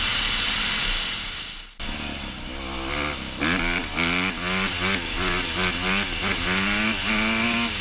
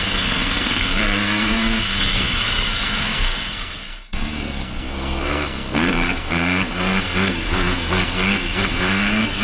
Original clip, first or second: first